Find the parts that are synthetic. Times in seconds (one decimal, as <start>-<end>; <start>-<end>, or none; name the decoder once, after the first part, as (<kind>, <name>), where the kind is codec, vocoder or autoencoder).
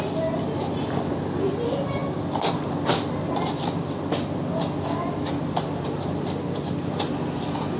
none